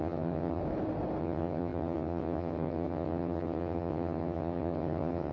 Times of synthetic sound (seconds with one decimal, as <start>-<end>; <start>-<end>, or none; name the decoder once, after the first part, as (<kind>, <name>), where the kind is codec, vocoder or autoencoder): 0.0-0.6 (vocoder, HiFi-GAN); 1.2-5.3